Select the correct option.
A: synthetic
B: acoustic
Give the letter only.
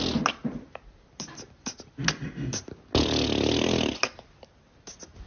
B